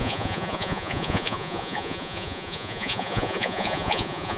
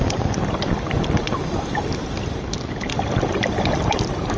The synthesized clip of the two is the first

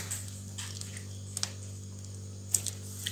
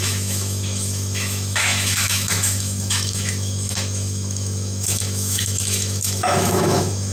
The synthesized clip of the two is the second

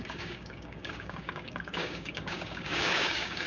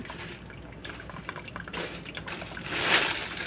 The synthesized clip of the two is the first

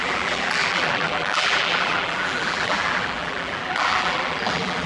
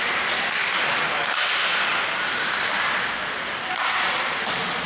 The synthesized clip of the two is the first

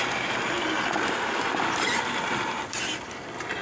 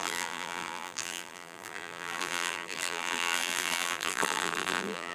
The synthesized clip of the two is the second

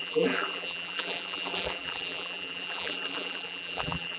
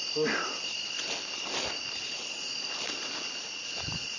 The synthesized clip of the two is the first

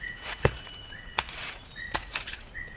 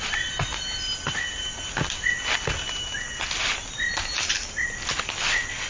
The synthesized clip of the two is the first